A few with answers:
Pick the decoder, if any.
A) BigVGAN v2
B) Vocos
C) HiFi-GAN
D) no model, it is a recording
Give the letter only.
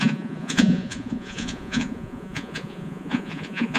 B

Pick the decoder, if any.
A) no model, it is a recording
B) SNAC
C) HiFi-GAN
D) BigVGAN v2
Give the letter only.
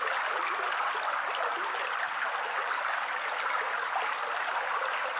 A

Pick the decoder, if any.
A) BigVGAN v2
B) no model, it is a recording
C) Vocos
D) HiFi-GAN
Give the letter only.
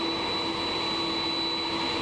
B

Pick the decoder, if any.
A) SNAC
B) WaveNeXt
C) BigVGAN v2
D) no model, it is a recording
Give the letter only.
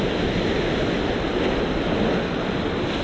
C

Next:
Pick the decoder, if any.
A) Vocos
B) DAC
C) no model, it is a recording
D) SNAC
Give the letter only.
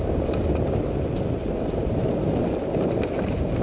C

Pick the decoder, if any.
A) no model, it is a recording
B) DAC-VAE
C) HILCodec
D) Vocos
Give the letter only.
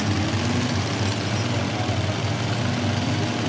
A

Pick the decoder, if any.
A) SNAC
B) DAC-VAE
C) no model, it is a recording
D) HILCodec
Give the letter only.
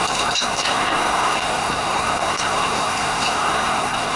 A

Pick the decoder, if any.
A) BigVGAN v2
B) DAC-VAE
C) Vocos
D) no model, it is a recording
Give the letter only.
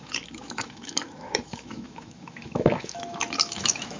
B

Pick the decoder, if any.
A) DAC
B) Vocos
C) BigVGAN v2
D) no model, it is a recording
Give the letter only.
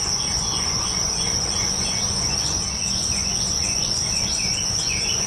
B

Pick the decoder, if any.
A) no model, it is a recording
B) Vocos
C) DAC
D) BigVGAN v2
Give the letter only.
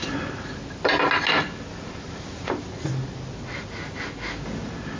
A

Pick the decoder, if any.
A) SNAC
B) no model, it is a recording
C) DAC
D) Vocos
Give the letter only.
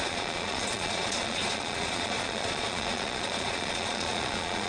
D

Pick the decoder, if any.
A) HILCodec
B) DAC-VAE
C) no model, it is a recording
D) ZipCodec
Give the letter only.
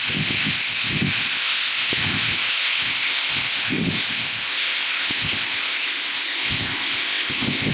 D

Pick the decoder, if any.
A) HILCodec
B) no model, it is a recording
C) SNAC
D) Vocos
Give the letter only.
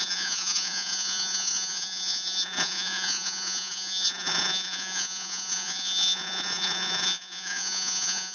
D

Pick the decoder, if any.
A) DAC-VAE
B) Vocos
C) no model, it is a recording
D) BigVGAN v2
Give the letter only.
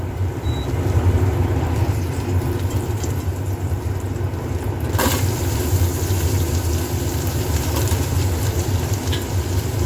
D